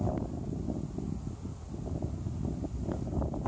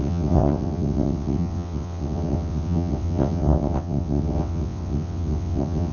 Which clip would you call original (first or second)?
first